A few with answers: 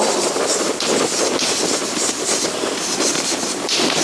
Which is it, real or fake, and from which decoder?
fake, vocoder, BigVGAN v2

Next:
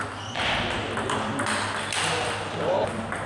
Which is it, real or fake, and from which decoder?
real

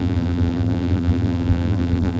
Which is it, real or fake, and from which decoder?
fake, vocoder, BigVGAN v2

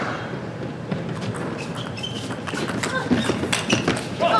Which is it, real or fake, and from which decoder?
real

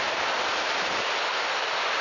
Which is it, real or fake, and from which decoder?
fake, vocoder, BigVGAN v2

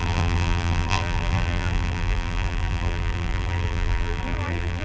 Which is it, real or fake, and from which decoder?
fake, vocoder, BigVGAN v2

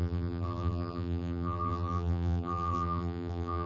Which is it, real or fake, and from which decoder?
fake, vocoder, BigVGAN v2